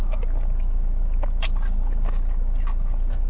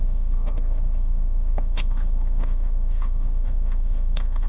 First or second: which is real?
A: first